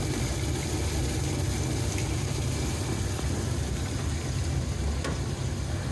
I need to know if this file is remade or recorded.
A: recorded